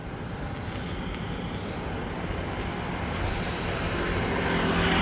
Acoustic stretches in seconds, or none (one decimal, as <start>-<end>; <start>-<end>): 0.0-5.0